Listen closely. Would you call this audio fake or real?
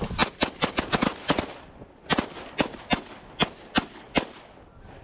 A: real